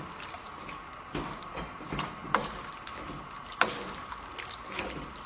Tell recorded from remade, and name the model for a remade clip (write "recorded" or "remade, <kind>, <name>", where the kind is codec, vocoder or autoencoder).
recorded